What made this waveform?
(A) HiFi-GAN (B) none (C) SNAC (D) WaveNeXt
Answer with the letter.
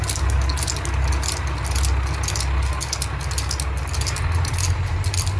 B